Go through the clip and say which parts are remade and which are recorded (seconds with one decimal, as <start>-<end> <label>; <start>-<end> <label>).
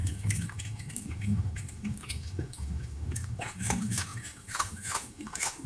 0.0-5.7 remade